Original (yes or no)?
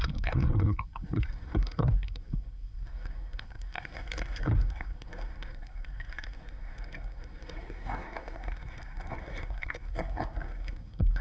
no